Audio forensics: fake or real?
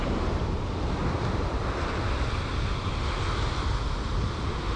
real